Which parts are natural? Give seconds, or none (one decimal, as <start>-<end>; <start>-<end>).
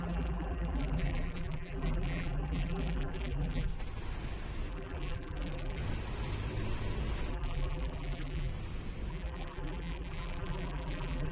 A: 3.7-4.7; 5.8-7.3; 8.5-9.1